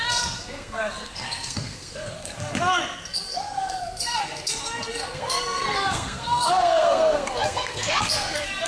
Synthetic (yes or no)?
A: yes